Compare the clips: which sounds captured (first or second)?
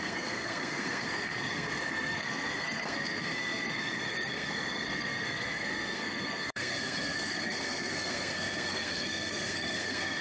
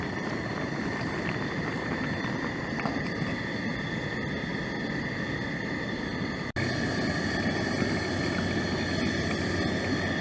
second